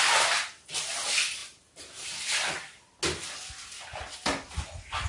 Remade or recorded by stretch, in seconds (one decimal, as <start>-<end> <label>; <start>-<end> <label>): 0.0-5.1 recorded